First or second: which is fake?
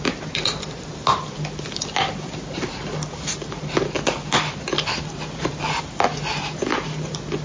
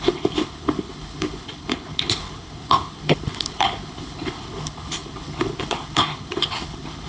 second